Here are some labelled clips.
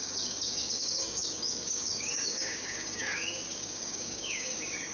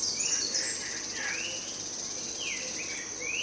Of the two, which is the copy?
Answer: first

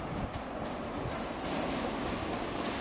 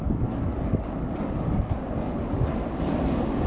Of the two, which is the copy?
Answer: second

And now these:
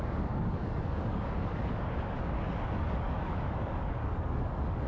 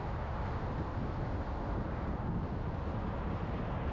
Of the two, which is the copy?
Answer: first